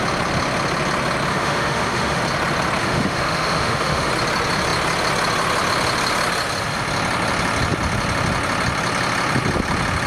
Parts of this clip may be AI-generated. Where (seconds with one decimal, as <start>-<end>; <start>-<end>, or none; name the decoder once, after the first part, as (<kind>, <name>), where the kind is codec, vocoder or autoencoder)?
1.3-2.2 (autoencoder, DAC-VAE); 2.8-4.1